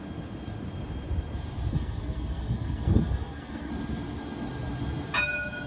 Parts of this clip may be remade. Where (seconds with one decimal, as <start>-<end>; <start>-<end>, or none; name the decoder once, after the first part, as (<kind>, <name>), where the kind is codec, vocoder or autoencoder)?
1.7-3.7 (codec, SNAC)